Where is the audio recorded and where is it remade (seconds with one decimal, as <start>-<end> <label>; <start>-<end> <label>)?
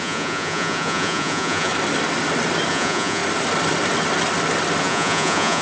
0.0-1.7 remade; 1.7-2.7 recorded; 2.7-3.2 remade; 3.2-4.8 recorded; 4.8-5.6 remade